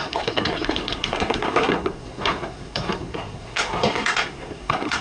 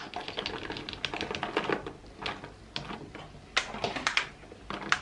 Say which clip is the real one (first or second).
second